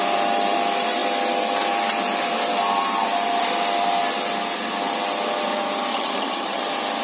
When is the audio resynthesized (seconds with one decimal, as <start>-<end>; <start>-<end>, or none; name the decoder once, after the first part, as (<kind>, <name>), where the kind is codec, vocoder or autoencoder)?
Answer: 5.9-6.6 (vocoder, HiFi-GAN)

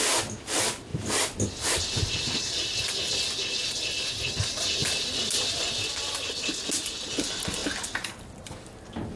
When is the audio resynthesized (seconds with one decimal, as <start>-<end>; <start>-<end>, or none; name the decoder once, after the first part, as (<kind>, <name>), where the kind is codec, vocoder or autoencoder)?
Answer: 0.9-2.9 (vocoder, BigVGAN v2); 4.8-6.7

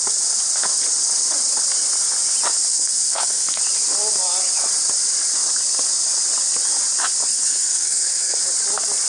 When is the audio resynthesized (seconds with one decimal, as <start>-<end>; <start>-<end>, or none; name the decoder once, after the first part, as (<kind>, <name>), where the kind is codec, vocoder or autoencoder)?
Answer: 2.7-3.6 (codec, SNAC); 7.3-8.4